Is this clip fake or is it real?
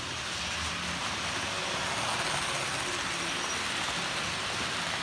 real